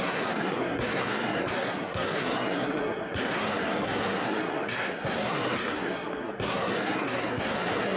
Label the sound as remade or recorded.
remade